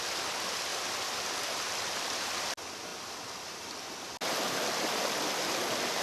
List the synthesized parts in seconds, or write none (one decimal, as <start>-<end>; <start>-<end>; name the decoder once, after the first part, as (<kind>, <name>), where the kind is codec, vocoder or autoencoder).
none